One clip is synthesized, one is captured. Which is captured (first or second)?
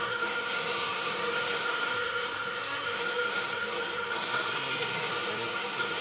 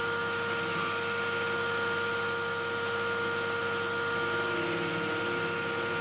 second